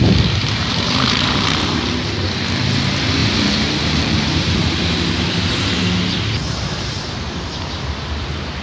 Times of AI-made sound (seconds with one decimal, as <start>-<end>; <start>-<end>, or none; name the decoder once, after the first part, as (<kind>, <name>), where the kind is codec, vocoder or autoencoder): 0.4-1.8 (vocoder, BigVGAN v2); 3.2-4.8; 6.4-7.5